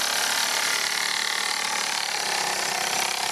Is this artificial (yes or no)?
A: no